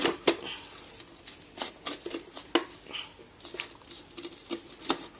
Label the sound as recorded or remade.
recorded